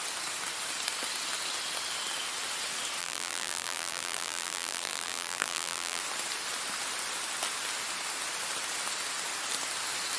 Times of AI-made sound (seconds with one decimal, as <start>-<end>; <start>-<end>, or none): 3.0-6.0